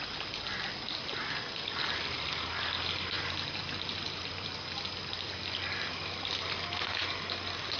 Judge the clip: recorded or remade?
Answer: recorded